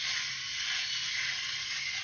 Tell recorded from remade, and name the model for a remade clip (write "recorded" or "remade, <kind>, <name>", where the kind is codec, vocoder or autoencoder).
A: recorded